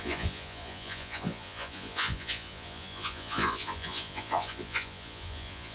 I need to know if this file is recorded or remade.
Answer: remade